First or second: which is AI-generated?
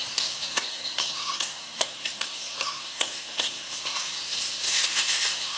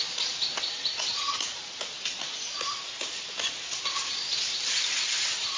first